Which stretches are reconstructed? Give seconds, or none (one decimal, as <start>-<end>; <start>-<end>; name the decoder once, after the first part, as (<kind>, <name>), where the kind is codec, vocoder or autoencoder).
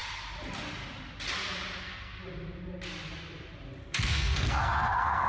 1.8-2.2 (codec, SNAC); 3.8-5.3